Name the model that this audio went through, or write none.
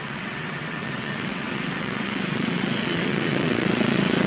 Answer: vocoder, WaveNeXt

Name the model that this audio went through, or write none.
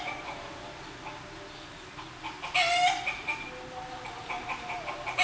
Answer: none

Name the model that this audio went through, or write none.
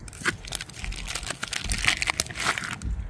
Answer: none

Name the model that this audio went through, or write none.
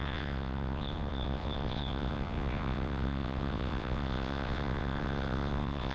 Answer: vocoder, WaveNeXt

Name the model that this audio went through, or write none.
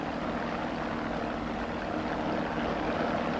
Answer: none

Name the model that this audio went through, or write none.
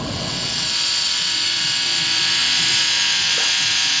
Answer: vocoder, WaveNeXt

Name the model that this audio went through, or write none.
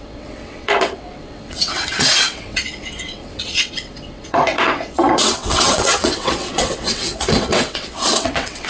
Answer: vocoder, WaveNeXt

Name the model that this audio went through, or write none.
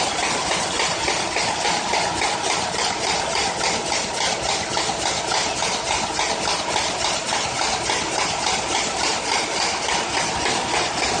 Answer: none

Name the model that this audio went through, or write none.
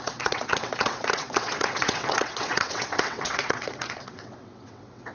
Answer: vocoder, WaveNeXt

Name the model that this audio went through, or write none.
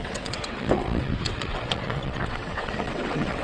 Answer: vocoder, WaveNeXt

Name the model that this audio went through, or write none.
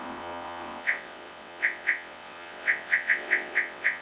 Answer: vocoder, WaveNeXt